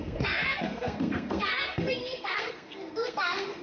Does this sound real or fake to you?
fake